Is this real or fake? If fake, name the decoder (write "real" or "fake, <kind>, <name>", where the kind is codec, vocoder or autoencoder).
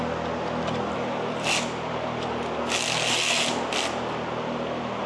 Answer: real